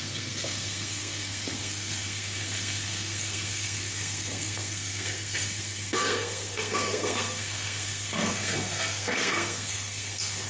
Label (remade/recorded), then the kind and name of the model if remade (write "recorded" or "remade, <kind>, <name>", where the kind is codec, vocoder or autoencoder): remade, codec, SNAC